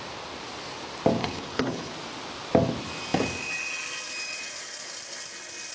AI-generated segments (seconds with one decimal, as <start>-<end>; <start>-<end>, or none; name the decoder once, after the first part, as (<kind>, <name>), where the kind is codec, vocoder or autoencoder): 1.2-1.9 (codec, HILCodec)